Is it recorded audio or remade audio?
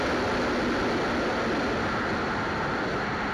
recorded